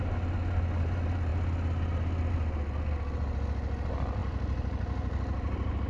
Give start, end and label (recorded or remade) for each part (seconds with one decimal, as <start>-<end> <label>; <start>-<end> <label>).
0.0-5.9 recorded

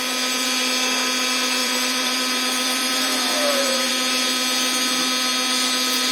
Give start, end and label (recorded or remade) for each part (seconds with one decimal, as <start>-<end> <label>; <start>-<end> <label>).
0.0-1.6 recorded; 1.6-3.9 remade; 3.9-6.1 recorded

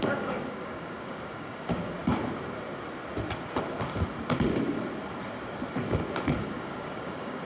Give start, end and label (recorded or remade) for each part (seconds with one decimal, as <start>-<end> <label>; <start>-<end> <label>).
0.0-2.0 remade; 2.0-6.4 recorded; 6.4-7.4 remade

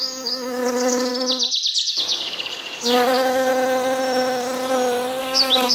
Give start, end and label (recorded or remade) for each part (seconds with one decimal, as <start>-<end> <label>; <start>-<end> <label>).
0.0-1.1 remade; 1.1-1.9 recorded; 1.9-3.5 remade; 3.5-5.2 recorded; 5.2-5.7 remade

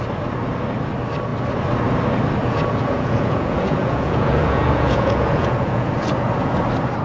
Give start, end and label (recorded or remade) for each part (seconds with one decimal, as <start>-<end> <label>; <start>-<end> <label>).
0.0-2.4 recorded; 2.4-5.9 remade; 5.9-7.0 recorded